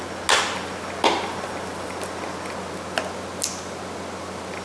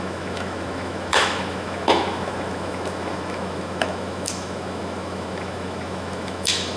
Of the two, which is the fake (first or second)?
second